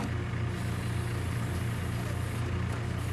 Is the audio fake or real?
real